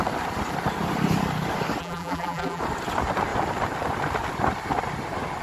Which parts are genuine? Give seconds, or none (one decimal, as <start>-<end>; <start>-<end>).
0.0-1.8; 2.6-5.4